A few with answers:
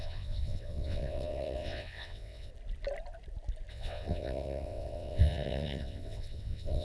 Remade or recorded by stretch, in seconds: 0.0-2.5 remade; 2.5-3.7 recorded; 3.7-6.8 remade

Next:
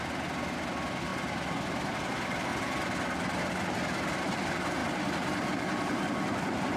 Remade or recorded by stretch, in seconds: 0.0-2.5 remade; 2.5-3.4 recorded; 3.4-6.8 remade